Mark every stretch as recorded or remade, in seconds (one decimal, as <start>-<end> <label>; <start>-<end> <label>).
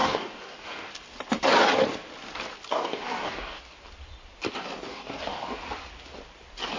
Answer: 0.0-0.9 remade; 0.9-2.7 recorded; 2.7-3.6 remade; 3.6-4.9 recorded; 4.9-5.6 remade; 5.6-6.8 recorded